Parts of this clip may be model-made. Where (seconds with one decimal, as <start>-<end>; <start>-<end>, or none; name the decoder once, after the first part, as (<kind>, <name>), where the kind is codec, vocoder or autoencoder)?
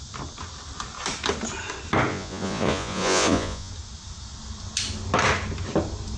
2.1-3.7 (vocoder, Vocos)